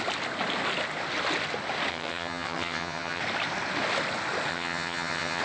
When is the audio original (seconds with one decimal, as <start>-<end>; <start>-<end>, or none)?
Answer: 0.0-1.9; 3.2-4.5